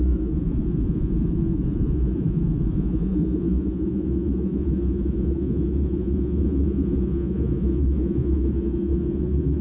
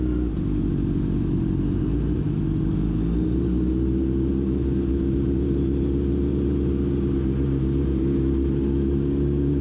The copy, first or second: first